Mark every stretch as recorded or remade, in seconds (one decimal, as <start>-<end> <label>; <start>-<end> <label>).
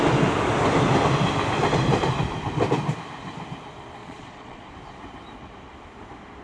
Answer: 0.0-4.0 recorded; 4.0-4.7 remade; 4.7-6.4 recorded